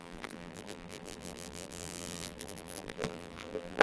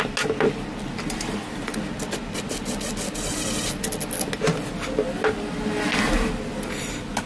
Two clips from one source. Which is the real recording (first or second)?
second